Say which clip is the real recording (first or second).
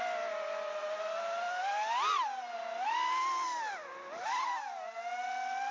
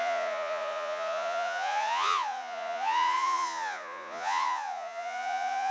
first